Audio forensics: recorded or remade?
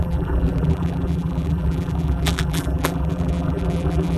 remade